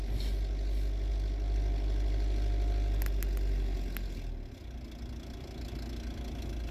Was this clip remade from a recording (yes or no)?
no